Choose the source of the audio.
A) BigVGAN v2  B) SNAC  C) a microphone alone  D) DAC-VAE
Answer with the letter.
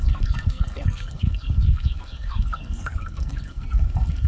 B